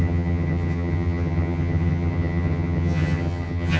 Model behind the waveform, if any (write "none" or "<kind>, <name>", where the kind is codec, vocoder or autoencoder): vocoder, HiFi-GAN